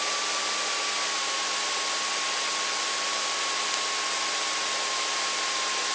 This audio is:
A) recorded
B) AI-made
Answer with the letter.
A